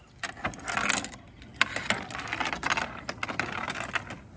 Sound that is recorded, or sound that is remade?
recorded